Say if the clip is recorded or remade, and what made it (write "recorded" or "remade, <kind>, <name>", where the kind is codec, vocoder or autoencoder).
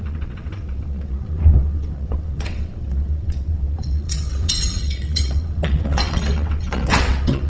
remade, vocoder, WaveNeXt